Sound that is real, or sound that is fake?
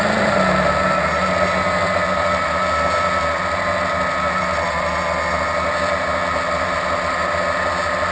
real